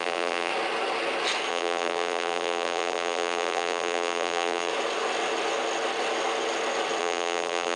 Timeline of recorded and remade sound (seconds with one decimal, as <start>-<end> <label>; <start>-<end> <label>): 0.0-0.5 remade; 0.5-1.5 recorded; 1.5-4.7 remade; 4.7-7.0 recorded; 7.0-7.8 remade